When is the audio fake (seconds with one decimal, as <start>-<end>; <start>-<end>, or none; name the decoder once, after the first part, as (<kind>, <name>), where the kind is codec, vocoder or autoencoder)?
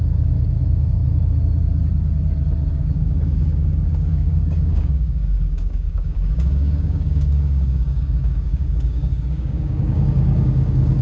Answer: 0.0-1.0 (codec, DAC); 2.7-11.0